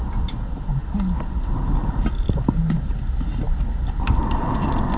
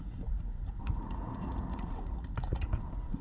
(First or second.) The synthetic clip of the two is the second